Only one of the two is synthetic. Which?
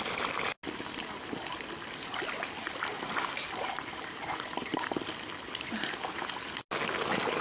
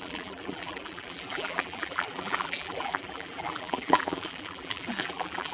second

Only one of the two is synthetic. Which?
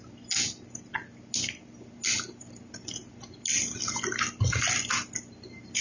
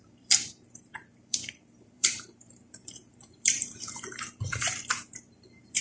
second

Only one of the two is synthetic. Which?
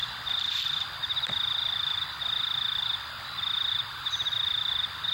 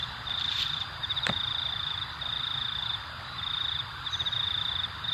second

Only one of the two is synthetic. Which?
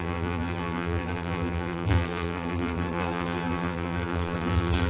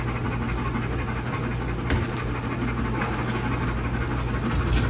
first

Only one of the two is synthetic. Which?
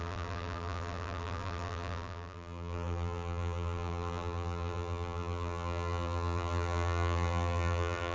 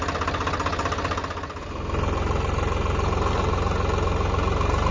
first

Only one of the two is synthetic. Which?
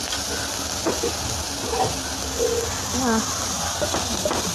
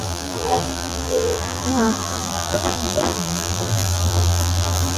second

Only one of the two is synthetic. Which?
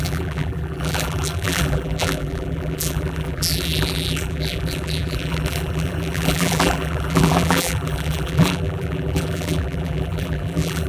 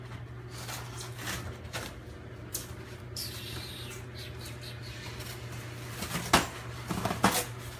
first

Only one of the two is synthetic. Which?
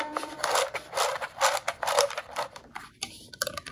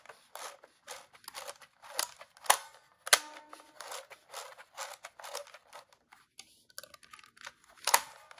first